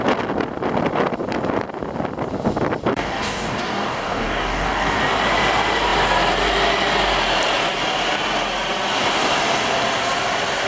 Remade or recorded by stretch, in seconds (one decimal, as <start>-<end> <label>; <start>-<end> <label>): 0.0-2.9 recorded; 2.9-5.0 remade; 5.0-10.7 recorded